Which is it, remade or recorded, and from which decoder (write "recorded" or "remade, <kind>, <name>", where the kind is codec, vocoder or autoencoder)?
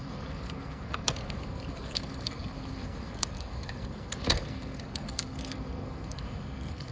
remade, codec, SNAC